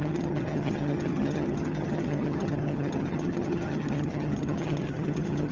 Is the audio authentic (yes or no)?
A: no